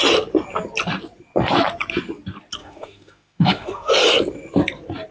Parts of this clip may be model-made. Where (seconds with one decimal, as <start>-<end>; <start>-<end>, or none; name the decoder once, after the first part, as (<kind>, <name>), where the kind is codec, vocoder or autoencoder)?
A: 2.6-3.9 (autoencoder, DAC-VAE)